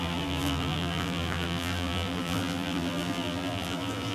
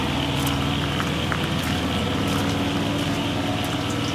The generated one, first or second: first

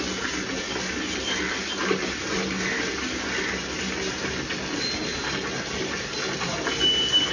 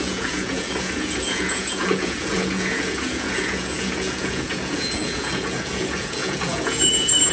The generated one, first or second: second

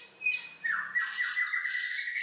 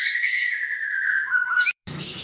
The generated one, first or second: second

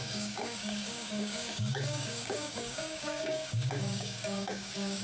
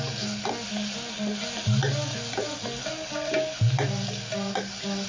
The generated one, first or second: first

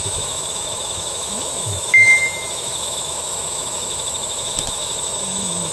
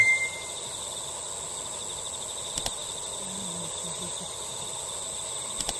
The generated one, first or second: first